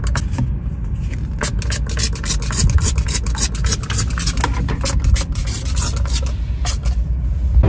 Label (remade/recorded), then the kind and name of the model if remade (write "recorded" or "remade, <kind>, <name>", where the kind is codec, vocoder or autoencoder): recorded